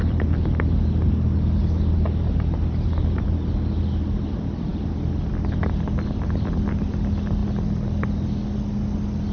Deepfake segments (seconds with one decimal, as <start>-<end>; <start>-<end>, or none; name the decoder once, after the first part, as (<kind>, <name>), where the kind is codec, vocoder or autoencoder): none